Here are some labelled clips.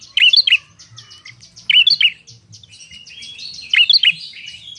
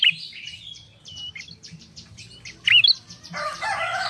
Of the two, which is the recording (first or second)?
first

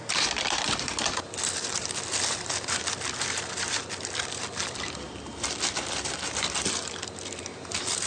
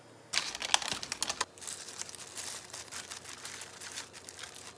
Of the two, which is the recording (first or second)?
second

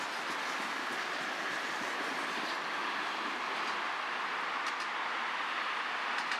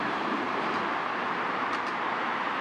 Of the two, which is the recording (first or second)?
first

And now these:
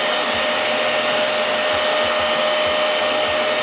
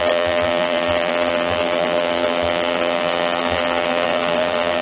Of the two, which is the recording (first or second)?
first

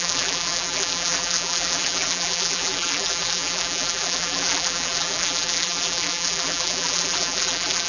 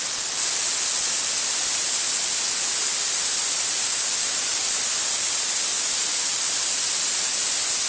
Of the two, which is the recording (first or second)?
second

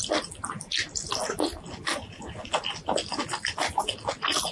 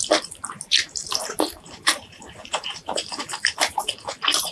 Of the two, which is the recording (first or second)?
first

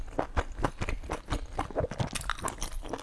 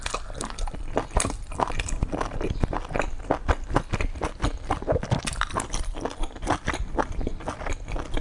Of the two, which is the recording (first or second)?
first